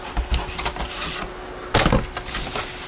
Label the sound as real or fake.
real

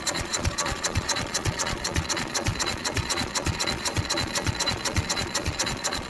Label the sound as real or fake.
fake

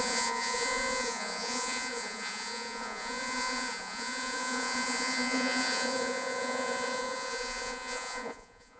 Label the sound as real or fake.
fake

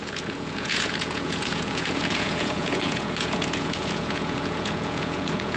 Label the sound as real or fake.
fake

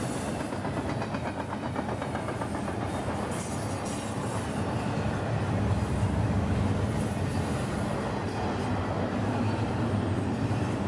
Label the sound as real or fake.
real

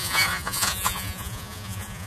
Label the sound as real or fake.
fake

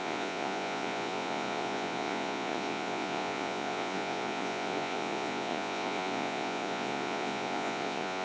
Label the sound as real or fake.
fake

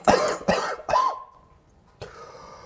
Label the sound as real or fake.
fake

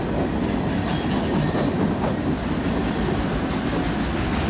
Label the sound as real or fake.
real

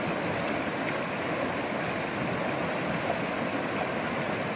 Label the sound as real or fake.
real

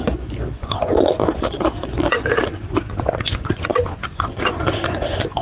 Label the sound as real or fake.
fake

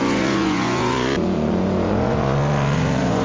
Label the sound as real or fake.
fake